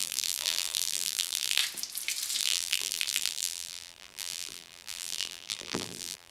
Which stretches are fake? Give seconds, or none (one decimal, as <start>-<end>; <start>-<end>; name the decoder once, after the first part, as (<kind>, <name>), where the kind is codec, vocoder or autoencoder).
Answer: 0.0-1.6 (vocoder, BigVGAN v2); 2.4-6.3